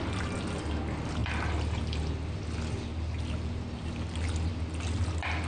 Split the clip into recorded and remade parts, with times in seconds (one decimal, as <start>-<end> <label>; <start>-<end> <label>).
0.0-1.2 recorded; 1.2-4.5 remade; 4.5-5.5 recorded

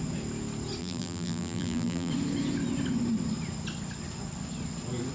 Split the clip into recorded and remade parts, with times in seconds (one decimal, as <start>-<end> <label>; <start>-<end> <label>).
0.0-0.8 recorded; 0.8-2.1 remade; 2.1-5.1 recorded